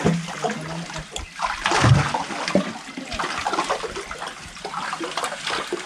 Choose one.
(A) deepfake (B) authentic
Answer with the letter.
B